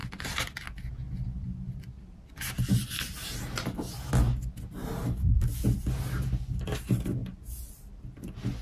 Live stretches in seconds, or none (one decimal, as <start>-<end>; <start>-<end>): 0.0-8.6